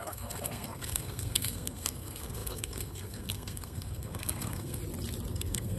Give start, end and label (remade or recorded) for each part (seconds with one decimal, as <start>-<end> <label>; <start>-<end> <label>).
0.0-4.8 remade; 4.8-5.3 recorded; 5.3-5.8 remade